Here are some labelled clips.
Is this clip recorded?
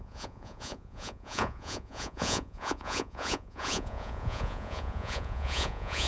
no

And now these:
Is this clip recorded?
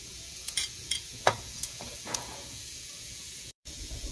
no